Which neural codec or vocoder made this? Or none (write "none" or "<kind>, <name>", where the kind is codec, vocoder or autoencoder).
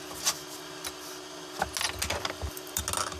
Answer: none